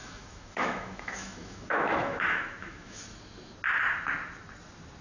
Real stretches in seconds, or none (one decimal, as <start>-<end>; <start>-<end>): 3.0-5.0